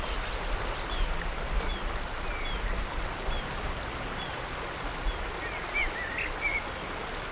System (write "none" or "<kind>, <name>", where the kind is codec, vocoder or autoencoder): none